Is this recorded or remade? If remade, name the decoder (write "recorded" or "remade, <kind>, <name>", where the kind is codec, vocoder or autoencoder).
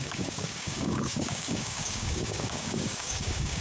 remade, codec, DAC